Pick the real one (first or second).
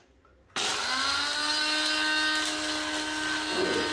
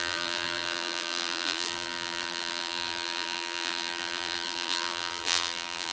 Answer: first